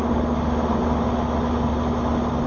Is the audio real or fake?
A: real